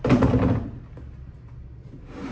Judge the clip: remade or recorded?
recorded